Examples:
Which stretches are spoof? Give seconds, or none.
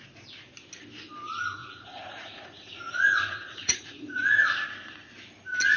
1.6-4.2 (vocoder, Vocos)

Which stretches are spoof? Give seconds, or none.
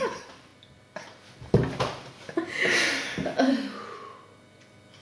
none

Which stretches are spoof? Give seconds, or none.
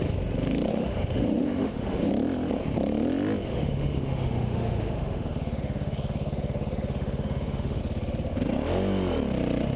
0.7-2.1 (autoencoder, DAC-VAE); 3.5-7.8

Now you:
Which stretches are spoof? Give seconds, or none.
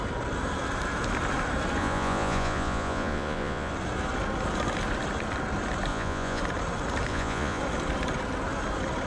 1.8-3.7 (vocoder, Vocos); 5.9-6.4; 7.1-7.6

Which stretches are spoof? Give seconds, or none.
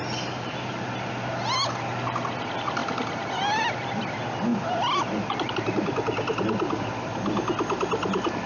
none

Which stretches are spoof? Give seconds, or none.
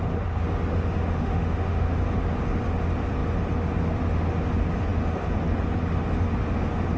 0.7-2.0 (autoencoder, DAC-VAE)